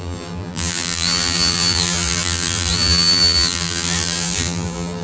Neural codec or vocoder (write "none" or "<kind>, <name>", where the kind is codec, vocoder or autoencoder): vocoder, BigVGAN v2